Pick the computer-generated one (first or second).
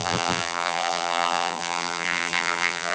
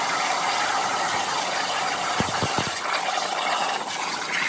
first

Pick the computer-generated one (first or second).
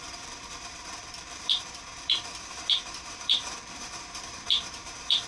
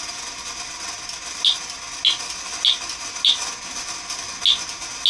first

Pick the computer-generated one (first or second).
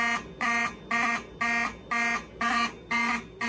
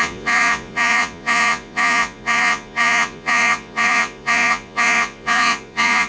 second